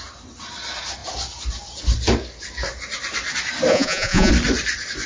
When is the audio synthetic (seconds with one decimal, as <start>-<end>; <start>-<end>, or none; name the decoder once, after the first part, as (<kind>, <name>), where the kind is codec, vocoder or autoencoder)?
3.7-4.3 (vocoder, Vocos)